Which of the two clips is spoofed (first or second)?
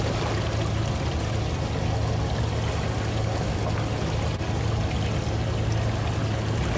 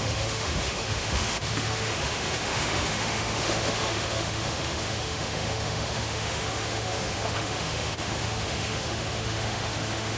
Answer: second